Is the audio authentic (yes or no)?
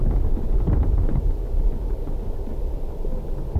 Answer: yes